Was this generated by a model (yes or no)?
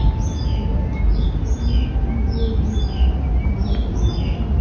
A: no